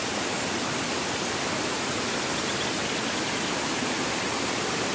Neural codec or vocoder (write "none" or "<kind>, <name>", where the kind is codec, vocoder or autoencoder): none